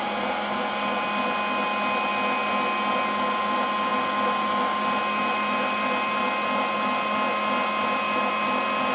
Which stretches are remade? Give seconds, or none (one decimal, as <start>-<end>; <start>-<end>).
none